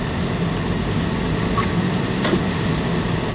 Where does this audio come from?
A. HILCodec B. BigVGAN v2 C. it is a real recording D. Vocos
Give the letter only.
C